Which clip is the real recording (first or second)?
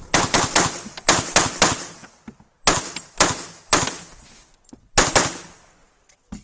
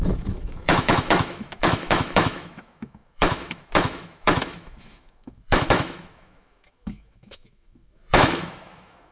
first